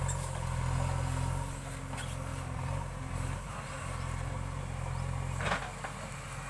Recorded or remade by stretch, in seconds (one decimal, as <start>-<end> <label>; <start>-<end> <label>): 0.0-2.3 recorded; 2.3-4.6 remade; 4.6-6.5 recorded